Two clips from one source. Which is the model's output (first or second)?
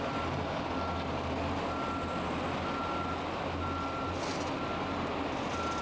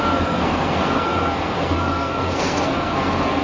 second